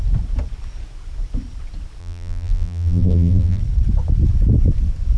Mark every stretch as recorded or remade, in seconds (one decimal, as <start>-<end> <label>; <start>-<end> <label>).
0.0-2.0 recorded; 2.0-3.6 remade; 3.6-5.2 recorded